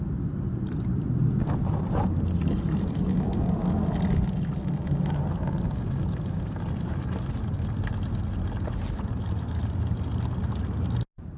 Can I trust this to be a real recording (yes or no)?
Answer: yes